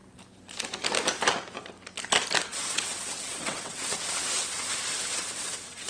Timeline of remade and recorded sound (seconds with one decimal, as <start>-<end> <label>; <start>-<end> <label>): 0.0-2.5 recorded; 2.5-5.9 remade